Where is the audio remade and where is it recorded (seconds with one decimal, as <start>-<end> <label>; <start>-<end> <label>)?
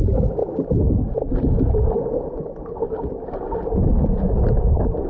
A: 0.0-0.4 recorded; 0.4-0.9 remade; 0.9-5.1 recorded